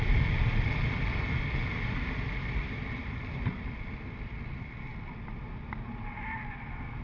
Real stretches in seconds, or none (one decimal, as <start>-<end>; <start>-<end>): 0.0-7.0